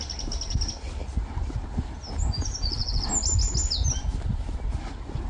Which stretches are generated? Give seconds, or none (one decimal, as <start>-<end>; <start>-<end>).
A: none